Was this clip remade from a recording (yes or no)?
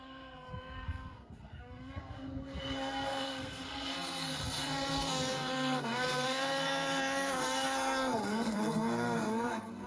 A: yes